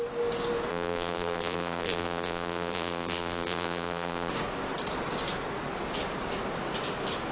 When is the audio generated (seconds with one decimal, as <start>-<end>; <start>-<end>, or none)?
0.7-4.3